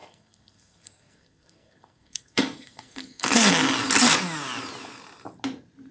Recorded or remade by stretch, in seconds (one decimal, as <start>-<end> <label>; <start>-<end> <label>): 0.0-3.5 remade; 3.5-5.9 recorded